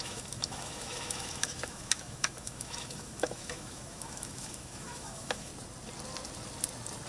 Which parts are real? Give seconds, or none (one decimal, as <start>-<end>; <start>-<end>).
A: 5.5-7.1